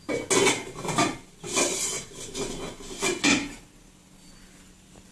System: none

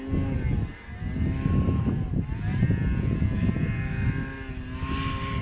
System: none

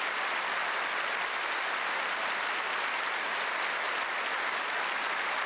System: none